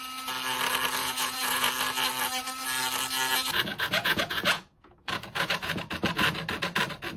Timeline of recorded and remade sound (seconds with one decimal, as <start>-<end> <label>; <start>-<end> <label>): 0.0-1.0 recorded; 1.0-1.7 remade; 1.7-3.7 recorded; 3.7-5.8 remade; 5.8-7.2 recorded